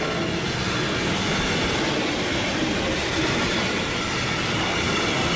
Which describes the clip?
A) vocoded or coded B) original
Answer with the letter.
B